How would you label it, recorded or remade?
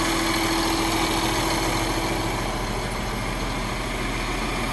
recorded